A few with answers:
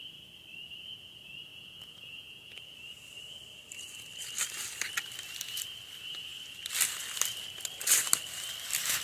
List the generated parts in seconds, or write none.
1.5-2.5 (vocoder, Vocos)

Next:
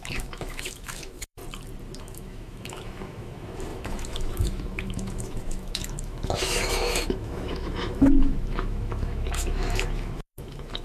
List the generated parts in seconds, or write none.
0.0-1.4 (autoencoder, DAC-VAE); 2.0-10.8

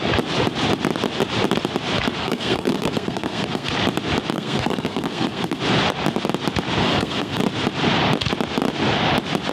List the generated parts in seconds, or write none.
2.2-3.7 (codec, SNAC); 4.3-5.6; 6.8-7.4

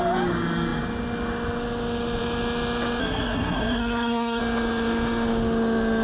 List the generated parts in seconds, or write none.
3.0-4.4 (codec, SNAC)

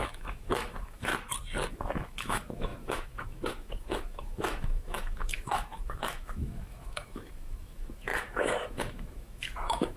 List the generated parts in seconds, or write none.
0.0-1.1 (autoencoder, DAC-VAE); 1.7-10.0

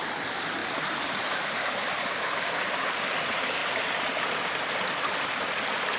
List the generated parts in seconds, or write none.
none

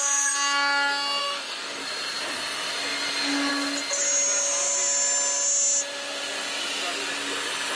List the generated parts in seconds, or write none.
1.2-1.8 (codec, DAC)